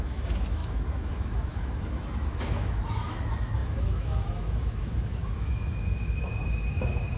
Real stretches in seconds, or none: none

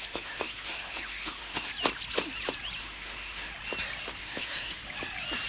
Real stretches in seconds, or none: 1.7-2.8; 3.5-4.2; 4.8-5.5

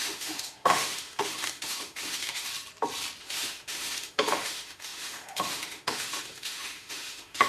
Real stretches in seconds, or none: 2.5-3.2

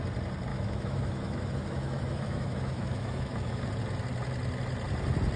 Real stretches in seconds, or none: 0.0-0.5; 3.7-5.4